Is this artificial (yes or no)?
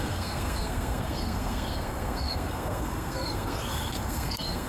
yes